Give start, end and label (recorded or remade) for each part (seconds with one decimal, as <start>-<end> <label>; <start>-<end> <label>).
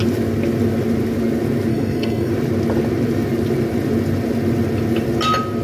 0.0-1.7 recorded; 1.7-2.3 remade; 2.3-5.6 recorded